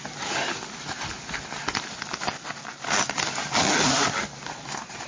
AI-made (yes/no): no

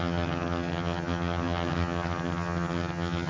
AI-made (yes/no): yes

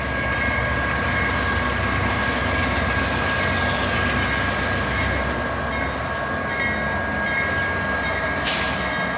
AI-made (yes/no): no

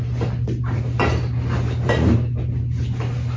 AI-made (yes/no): no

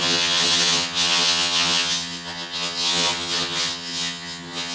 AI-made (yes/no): yes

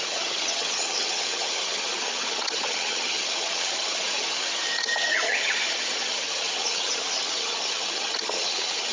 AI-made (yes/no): yes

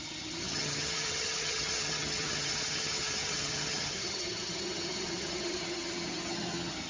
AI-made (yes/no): yes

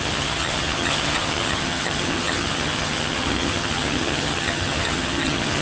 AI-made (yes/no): yes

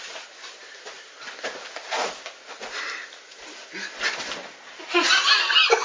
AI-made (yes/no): no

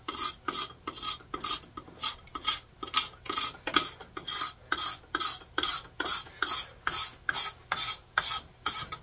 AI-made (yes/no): no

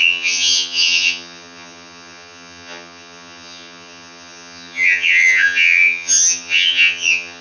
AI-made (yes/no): yes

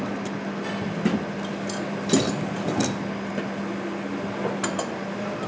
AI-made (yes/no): no